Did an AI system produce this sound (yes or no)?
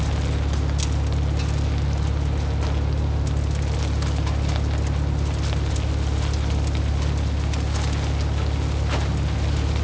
no